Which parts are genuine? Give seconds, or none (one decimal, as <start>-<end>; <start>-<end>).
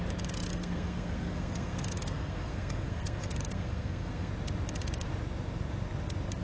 0.0-0.5; 4.3-6.4